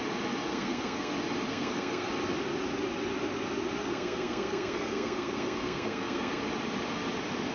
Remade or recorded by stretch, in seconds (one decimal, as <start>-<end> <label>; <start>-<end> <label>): 0.0-0.5 recorded; 0.5-1.1 remade; 1.1-1.5 recorded; 1.5-2.1 remade; 2.1-3.8 recorded; 3.8-6.4 remade; 6.4-7.5 recorded